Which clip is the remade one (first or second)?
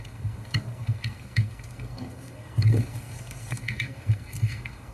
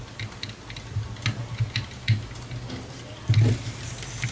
first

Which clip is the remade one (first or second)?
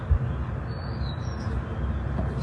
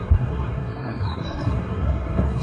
second